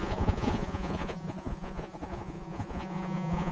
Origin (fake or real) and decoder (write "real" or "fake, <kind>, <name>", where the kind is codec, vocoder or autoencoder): fake, vocoder, Vocos